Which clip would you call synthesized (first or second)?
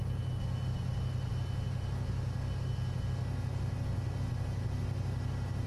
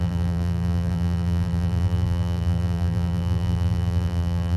second